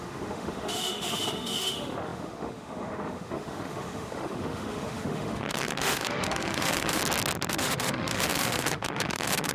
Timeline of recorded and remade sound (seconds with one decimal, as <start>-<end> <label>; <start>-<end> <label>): 0.0-7.0 remade; 7.0-7.5 recorded; 7.5-9.5 remade